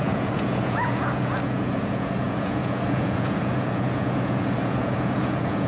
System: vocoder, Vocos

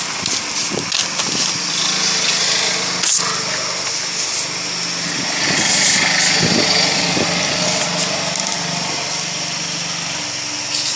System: none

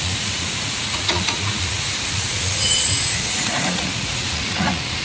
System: vocoder, Vocos